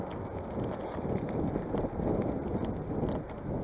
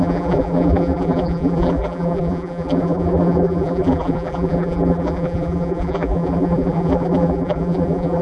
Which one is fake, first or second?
second